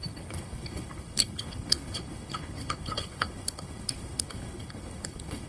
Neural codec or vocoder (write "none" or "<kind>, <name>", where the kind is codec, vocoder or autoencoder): codec, HILCodec